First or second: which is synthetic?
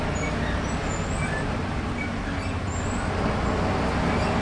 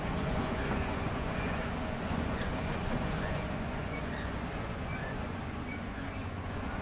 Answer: second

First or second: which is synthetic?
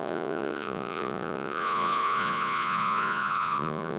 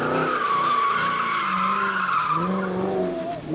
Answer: first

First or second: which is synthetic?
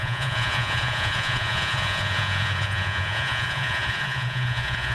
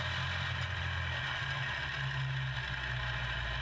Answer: first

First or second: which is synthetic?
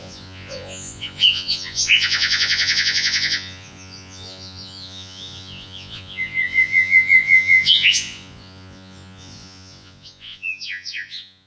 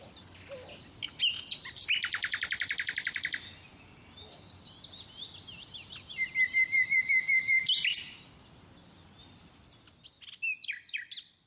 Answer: first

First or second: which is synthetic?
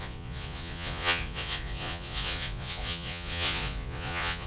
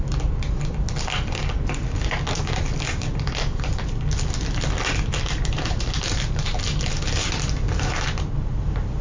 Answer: first